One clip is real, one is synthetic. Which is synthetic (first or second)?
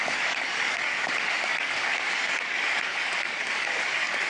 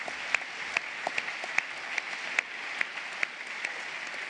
first